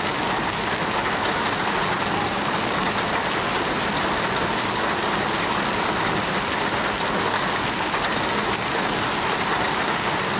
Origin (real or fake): real